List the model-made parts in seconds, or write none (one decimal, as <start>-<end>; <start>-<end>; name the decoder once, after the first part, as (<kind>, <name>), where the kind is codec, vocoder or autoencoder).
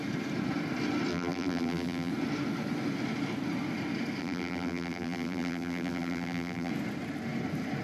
1.1-2.1 (vocoder, BigVGAN v2); 4.2-6.7